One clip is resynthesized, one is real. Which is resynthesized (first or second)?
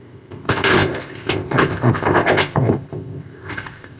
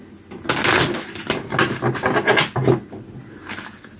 first